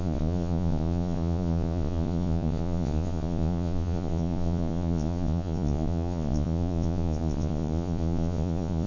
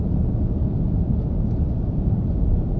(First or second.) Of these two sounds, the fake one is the first